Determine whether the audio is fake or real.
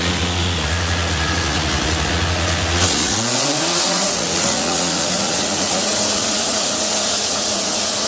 fake